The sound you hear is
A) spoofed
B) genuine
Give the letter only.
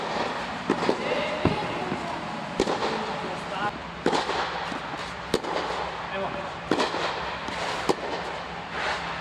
B